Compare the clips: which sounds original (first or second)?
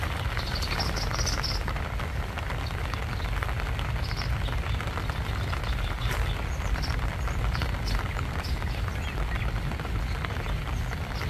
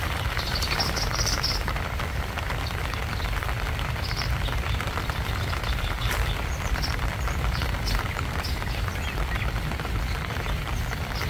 first